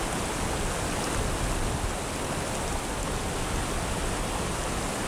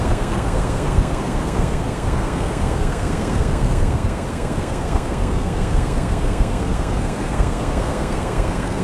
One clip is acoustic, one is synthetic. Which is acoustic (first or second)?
first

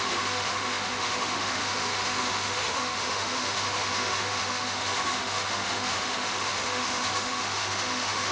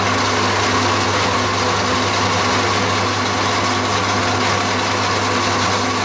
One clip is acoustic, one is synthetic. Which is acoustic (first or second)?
second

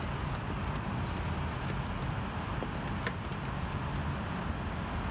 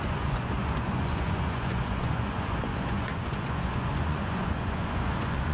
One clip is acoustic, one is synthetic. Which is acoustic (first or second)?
first